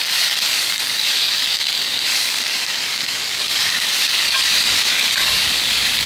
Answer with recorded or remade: remade